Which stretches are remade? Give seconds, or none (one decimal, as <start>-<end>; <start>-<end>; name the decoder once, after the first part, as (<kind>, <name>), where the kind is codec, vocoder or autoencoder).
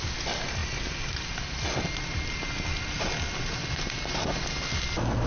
none